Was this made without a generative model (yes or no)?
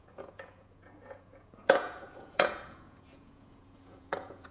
no